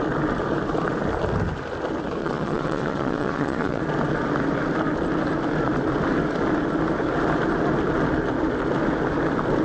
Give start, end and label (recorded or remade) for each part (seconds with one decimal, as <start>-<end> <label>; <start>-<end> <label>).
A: 0.0-2.2 recorded; 2.2-3.8 remade; 3.8-9.6 recorded